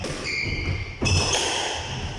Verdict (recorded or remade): recorded